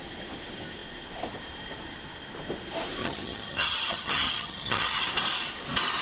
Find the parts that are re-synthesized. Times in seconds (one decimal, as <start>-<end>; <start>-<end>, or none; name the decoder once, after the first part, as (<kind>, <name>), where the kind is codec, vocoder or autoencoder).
3.0-5.1 (vocoder, HiFi-GAN)